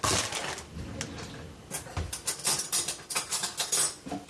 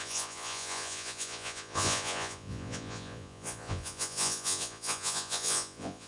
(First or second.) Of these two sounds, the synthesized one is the second